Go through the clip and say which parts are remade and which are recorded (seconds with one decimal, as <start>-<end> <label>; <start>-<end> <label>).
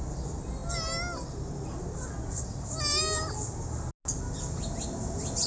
0.0-5.5 recorded